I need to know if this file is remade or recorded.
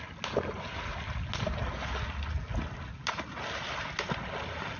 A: recorded